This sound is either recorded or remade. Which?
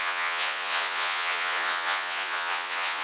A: remade